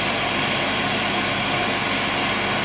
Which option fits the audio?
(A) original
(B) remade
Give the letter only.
A